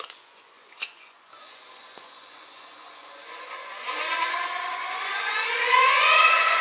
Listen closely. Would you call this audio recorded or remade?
remade